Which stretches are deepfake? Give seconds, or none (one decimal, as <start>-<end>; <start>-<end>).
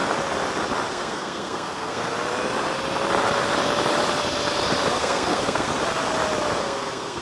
0.9-2.1; 4.9-5.7; 6.6-7.2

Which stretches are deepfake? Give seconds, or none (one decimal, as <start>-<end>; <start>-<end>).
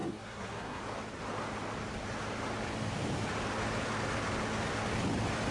0.0-0.8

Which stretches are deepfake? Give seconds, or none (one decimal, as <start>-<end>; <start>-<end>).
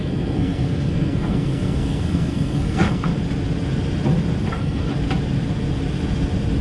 0.0-3.1; 4.5-4.9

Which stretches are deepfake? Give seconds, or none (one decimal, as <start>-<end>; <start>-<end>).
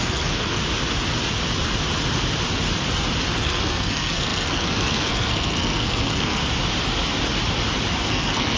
0.0-0.6; 3.4-6.4; 8.1-8.6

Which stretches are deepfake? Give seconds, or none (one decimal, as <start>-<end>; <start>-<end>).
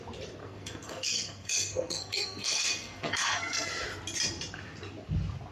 0.4-3.7